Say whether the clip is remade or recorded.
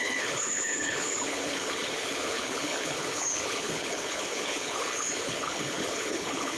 remade